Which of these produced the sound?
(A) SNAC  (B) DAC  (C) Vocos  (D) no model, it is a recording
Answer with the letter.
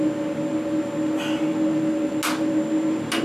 D